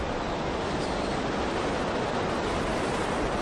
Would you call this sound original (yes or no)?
yes